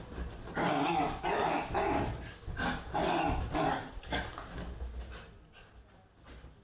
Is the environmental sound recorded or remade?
recorded